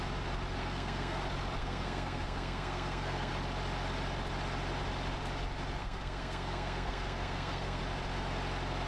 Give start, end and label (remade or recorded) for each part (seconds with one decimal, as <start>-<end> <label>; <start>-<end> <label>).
0.0-0.6 recorded; 0.6-1.2 remade; 1.2-1.6 recorded; 1.6-3.3 remade; 3.3-5.8 recorded; 5.8-7.8 remade; 7.8-8.9 recorded